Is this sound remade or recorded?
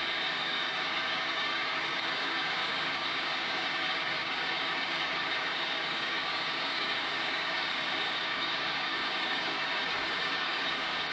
remade